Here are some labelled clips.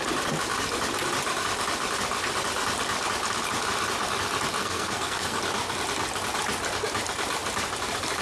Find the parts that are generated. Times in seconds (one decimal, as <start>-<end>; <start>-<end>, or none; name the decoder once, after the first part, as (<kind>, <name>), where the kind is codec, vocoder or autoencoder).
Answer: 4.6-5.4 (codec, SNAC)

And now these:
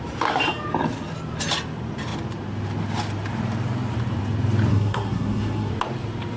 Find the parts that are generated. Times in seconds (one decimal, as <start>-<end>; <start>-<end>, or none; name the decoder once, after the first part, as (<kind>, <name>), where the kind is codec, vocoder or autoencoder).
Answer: 4.7-5.7 (codec, SNAC)

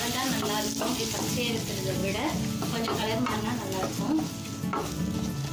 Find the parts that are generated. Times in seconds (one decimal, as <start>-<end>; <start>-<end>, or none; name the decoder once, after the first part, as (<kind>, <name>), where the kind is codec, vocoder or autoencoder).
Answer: none

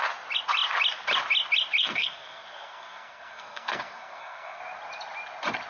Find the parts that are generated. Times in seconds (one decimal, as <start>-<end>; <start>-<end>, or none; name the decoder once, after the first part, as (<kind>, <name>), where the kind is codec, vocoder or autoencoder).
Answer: 1.8-4.6 (codec, SNAC)

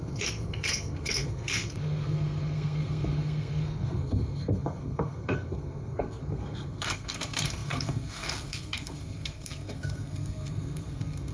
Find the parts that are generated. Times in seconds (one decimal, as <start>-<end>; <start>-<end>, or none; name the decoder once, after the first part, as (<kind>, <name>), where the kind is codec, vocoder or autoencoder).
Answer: 0.0-11.3 (codec, SNAC)